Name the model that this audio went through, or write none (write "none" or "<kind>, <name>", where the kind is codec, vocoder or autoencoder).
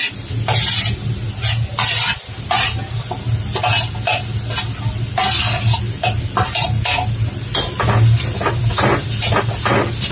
none